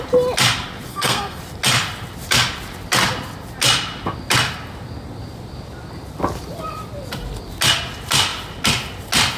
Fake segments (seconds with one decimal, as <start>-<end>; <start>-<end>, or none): 0.9-1.4